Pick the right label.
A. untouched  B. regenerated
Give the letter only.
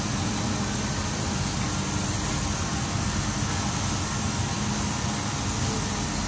A